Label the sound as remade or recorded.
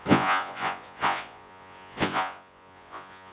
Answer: remade